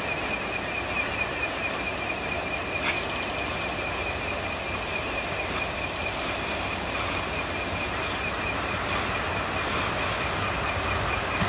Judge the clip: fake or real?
real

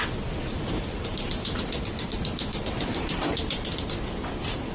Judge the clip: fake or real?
fake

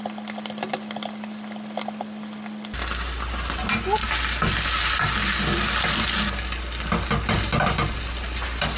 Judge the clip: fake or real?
real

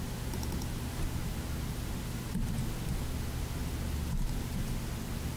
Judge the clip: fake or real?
real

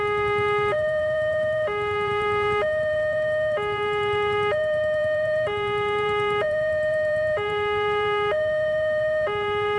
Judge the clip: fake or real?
fake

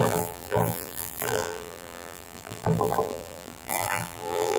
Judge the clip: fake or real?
fake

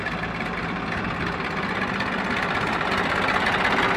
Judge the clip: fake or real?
real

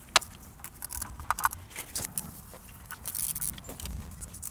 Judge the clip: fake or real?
real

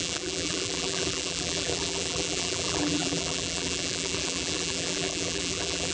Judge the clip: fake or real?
fake